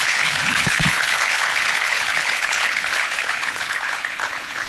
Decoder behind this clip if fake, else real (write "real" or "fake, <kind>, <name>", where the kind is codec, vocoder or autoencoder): fake, codec, HILCodec